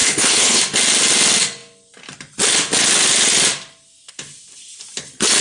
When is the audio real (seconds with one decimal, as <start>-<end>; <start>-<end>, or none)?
0.6-5.4